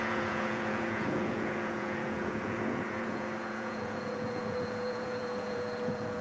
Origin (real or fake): fake